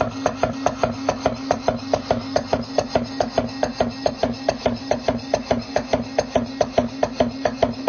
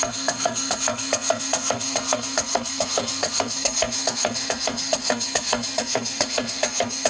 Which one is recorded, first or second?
first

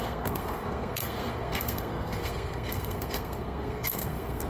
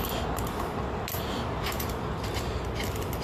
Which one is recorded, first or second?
second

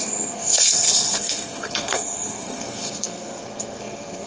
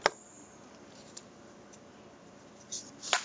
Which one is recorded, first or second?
second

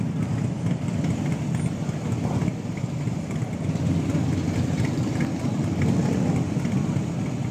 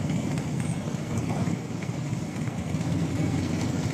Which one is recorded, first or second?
first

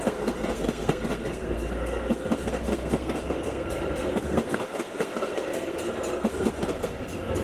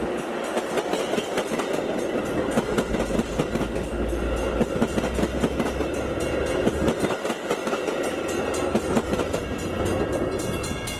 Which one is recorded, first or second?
second